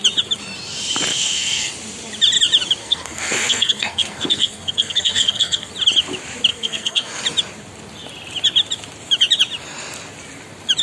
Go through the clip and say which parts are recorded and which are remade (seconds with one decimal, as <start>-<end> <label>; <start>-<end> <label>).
0.0-1.1 recorded; 1.1-1.7 remade; 1.7-2.8 recorded; 2.8-5.7 remade; 5.7-6.5 recorded; 6.5-7.2 remade; 7.2-10.8 recorded